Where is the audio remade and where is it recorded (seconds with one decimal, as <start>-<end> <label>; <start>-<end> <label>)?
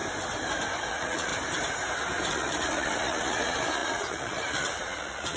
0.0-0.9 recorded; 0.9-1.3 remade; 1.3-2.3 recorded; 2.3-5.4 remade